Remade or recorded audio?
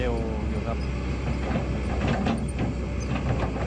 recorded